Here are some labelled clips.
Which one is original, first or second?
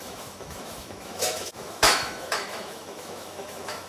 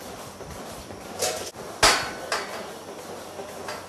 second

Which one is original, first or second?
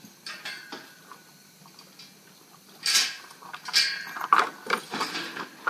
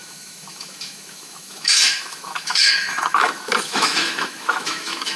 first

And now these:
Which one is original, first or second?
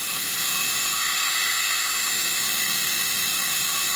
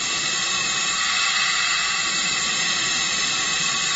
second